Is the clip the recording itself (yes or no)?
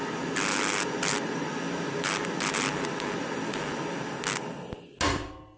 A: yes